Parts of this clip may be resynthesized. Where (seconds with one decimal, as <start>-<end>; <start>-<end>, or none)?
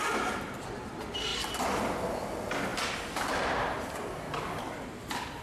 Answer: none